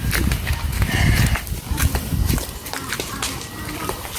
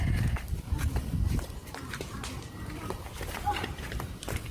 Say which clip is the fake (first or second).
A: second